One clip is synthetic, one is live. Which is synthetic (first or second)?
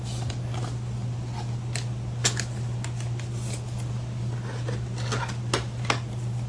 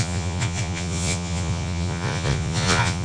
second